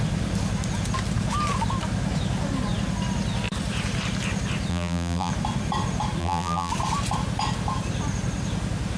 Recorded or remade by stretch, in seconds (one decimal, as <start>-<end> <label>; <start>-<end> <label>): 0.0-4.7 recorded; 4.7-5.3 remade; 5.3-6.2 recorded; 6.2-6.7 remade; 6.7-9.0 recorded